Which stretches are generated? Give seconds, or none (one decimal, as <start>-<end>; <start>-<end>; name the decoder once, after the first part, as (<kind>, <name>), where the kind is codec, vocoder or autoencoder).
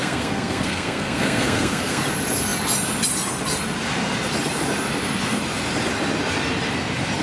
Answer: 0.0-2.0 (codec, SNAC)